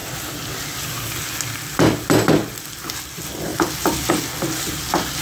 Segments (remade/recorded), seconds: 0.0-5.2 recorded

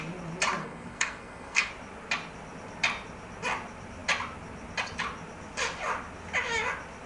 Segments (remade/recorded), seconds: 0.0-0.6 recorded; 0.6-1.7 remade; 1.7-7.1 recorded

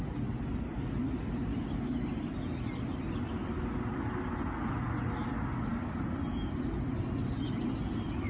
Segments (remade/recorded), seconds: 0.0-8.3 recorded

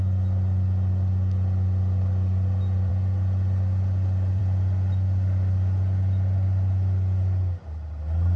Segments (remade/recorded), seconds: 0.0-8.4 recorded